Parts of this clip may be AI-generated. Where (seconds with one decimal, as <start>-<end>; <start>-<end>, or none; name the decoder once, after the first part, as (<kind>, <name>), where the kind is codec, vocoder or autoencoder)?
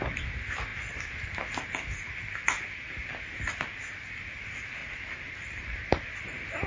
4.8-6.7 (vocoder, BigVGAN v2)